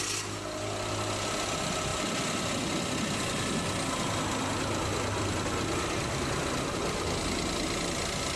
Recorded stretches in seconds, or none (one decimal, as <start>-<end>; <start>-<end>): 0.0-8.4